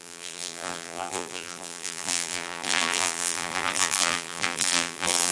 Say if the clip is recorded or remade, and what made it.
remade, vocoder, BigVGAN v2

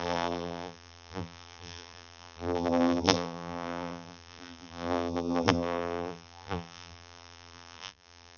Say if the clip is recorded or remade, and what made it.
remade, vocoder, BigVGAN v2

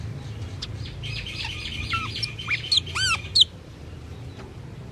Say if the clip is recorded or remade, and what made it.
recorded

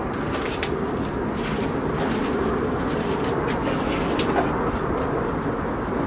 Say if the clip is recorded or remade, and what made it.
recorded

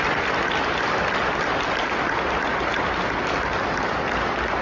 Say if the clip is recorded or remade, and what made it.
recorded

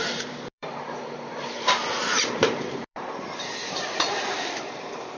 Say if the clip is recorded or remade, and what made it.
remade, vocoder, BigVGAN v2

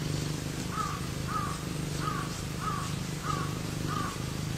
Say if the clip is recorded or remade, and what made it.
recorded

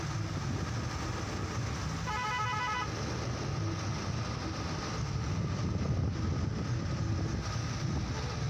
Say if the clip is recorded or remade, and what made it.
recorded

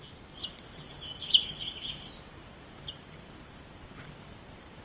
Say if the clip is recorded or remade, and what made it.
remade, vocoder, BigVGAN v2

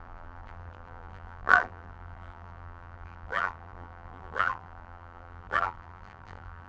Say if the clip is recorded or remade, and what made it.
remade, vocoder, BigVGAN v2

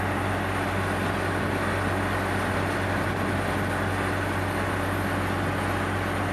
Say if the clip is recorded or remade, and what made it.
recorded